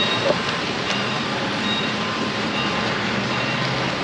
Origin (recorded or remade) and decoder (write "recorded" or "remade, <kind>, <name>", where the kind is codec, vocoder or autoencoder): remade, vocoder, BigVGAN v2